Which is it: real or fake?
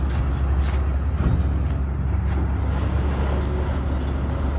real